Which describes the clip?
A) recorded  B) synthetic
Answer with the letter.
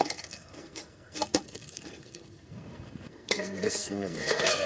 B